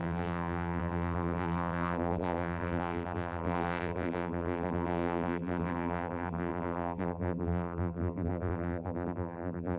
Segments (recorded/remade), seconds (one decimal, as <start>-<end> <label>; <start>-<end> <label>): 0.0-9.8 remade